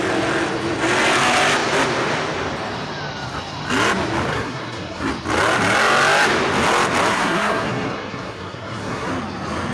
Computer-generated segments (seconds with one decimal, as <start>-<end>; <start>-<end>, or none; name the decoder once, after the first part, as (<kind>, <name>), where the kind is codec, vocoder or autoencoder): 4.3-5.1 (codec, SNAC); 7.1-9.1